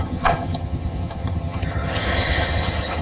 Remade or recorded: remade